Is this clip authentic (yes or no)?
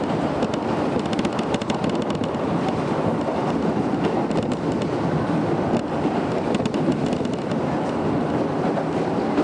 no